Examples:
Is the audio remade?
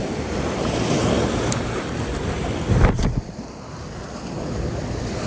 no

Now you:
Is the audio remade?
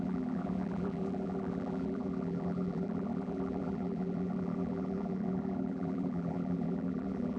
yes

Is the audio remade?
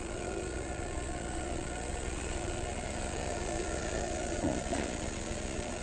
yes